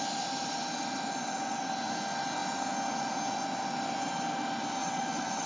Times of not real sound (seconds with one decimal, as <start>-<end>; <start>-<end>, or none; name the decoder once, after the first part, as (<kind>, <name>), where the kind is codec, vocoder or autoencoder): 1.2-1.9 (vocoder, WaveNeXt); 4.8-5.5